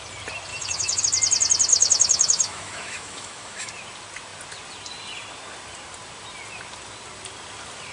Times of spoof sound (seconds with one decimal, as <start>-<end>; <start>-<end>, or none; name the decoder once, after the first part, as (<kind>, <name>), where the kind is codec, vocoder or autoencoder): 0.5-1.0 (autoencoder, DAC-VAE); 1.7-3.7